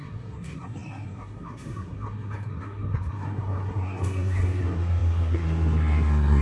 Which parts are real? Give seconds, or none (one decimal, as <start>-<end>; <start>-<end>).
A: none